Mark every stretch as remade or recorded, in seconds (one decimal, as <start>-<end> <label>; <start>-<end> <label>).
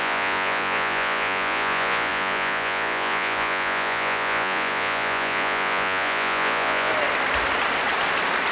0.0-6.9 remade; 6.9-8.5 recorded